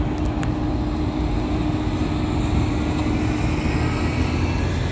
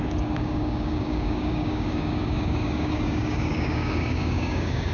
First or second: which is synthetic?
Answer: second